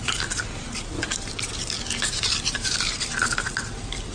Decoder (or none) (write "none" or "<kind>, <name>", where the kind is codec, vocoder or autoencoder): none